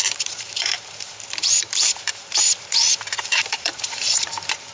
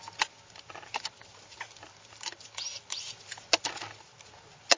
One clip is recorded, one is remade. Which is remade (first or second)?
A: first